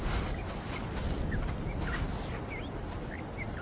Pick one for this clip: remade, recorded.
recorded